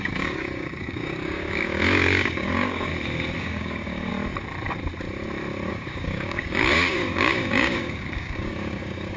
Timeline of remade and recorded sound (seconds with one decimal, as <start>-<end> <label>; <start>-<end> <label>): 0.0-2.9 remade; 2.9-3.4 recorded; 3.4-4.1 remade; 4.1-5.7 recorded; 5.7-9.2 remade